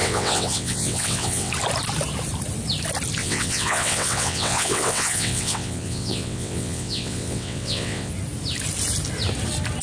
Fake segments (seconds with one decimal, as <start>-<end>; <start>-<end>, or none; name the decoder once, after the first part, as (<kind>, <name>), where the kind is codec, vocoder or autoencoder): 0.0-1.5 (vocoder, WaveNeXt); 3.2-8.1